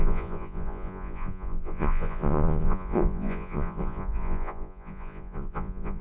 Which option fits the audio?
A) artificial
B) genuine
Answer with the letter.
A